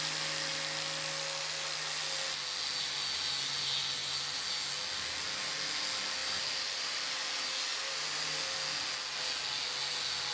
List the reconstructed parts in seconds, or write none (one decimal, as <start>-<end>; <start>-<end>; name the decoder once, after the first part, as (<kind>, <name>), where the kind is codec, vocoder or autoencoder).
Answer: 6.2-7.2 (vocoder, BigVGAN v2); 7.7-8.4